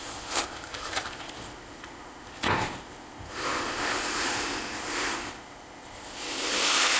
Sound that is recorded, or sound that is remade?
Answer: remade